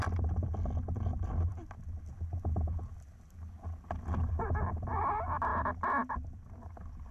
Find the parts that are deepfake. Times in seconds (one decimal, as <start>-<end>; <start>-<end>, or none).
none